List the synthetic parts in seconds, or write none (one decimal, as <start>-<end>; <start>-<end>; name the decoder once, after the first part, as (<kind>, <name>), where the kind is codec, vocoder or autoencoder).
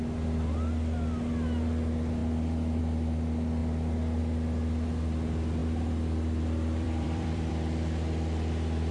2.2-2.8 (vocoder, BigVGAN v2); 3.6-4.2; 5.6-7.5